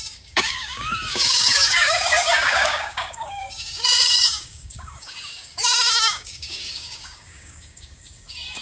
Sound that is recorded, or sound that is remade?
remade